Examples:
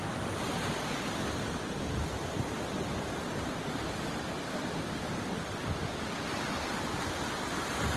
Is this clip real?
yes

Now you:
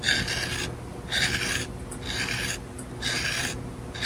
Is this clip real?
yes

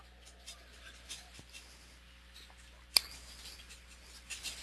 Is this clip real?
yes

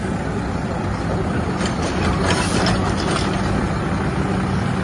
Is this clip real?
yes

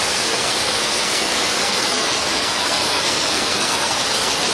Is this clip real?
no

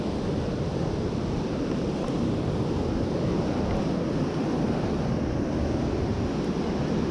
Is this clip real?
yes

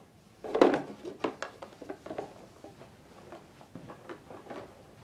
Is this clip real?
yes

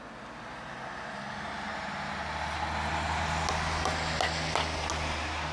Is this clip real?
yes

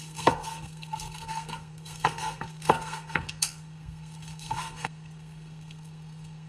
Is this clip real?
no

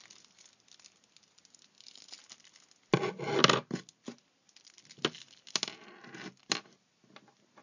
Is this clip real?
yes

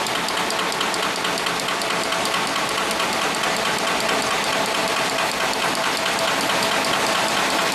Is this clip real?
yes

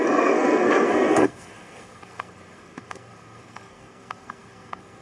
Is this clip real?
no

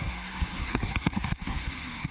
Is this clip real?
no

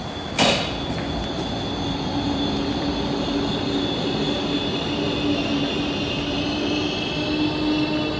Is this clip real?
yes